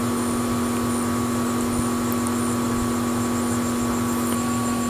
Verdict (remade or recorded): recorded